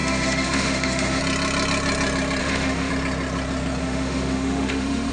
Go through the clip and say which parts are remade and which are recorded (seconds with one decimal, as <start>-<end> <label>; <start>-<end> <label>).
0.0-1.2 remade; 1.2-2.4 recorded; 2.4-2.9 remade; 2.9-3.8 recorded; 3.8-5.1 remade